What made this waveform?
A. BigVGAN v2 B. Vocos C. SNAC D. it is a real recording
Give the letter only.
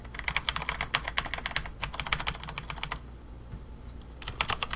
D